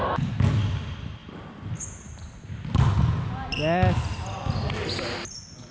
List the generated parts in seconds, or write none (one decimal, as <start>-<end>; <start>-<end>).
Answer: none